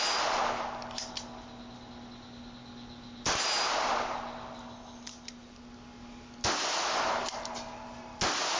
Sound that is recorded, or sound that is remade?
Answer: recorded